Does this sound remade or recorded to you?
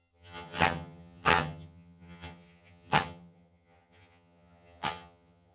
remade